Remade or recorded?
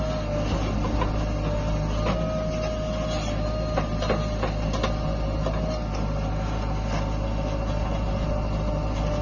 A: recorded